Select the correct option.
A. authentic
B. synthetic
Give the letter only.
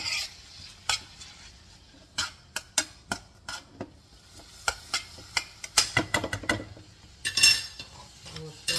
A